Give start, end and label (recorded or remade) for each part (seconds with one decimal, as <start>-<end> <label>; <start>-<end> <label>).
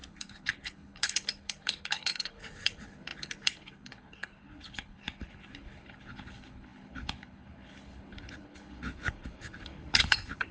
0.0-10.5 remade